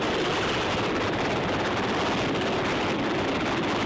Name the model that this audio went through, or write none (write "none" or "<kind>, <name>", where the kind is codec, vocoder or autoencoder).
none